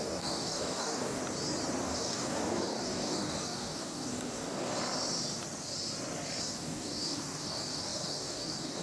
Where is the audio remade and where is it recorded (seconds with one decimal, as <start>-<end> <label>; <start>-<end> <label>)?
0.0-1.2 remade; 1.2-1.8 recorded; 1.8-4.7 remade; 4.7-6.4 recorded; 6.4-8.8 remade